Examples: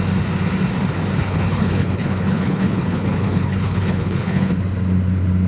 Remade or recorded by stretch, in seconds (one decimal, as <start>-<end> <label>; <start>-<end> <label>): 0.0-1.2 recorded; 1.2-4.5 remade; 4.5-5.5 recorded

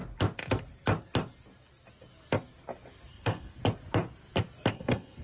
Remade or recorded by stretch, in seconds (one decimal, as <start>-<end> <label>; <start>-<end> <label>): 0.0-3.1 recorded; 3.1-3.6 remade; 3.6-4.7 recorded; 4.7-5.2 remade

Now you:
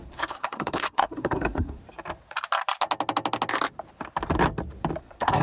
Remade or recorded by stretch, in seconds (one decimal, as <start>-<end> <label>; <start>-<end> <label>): 0.0-1.8 remade; 1.8-5.0 recorded; 5.0-5.4 remade